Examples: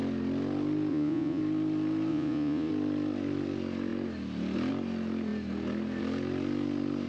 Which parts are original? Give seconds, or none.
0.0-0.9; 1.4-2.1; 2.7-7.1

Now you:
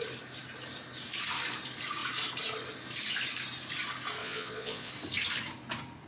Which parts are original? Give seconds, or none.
0.0-4.2; 4.9-6.1

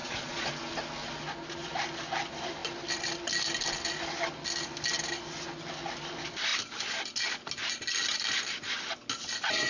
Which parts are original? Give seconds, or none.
0.5-9.7